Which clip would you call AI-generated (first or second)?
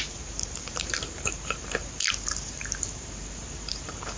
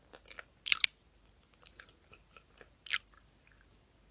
first